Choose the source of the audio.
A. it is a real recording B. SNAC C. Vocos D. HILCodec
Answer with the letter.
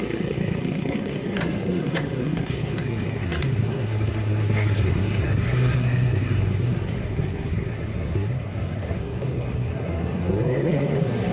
B